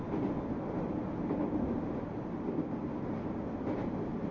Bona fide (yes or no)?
yes